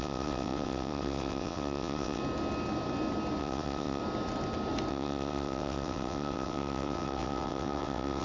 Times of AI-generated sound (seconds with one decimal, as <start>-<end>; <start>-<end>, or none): 0.0-2.2; 3.4-4.0; 4.9-8.2